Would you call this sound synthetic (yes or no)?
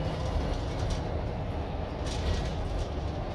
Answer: no